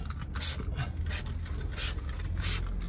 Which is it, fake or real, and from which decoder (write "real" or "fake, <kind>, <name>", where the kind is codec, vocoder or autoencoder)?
real